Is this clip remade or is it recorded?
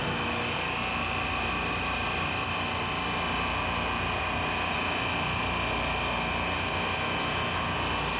recorded